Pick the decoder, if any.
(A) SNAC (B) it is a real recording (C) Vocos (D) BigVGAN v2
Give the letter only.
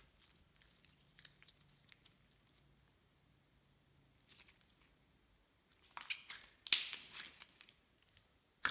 B